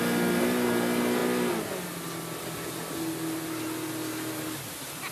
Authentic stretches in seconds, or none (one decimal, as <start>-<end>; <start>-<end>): 0.0-5.1